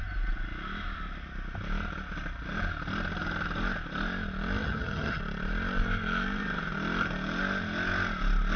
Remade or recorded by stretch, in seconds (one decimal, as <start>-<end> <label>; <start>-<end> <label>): 0.0-4.6 recorded; 4.6-5.2 remade; 5.2-8.6 recorded